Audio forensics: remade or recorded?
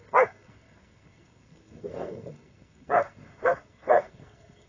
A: remade